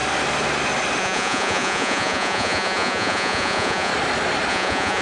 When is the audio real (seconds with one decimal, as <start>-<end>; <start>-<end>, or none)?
0.0-1.0; 3.9-4.5